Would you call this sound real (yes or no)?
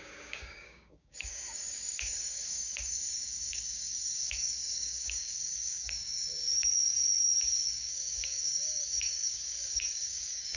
no